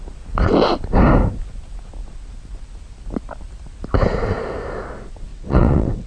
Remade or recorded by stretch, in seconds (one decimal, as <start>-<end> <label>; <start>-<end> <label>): 0.0-5.3 recorded; 5.3-6.1 remade